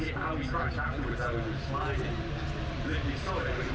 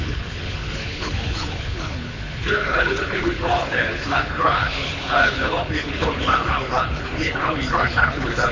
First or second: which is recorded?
first